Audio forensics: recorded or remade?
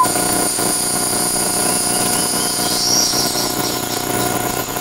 remade